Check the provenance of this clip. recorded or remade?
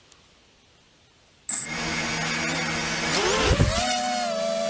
recorded